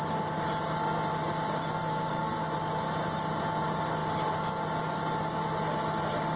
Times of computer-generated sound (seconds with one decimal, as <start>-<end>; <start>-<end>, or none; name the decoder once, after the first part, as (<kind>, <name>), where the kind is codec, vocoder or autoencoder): 1.7-2.4 (codec, SNAC)